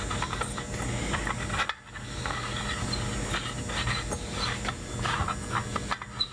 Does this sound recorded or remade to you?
recorded